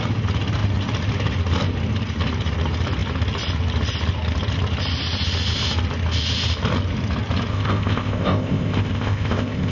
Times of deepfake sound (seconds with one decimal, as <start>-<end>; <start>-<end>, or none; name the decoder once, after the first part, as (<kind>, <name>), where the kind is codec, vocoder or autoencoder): 7.5-9.7 (codec, ZipCodec)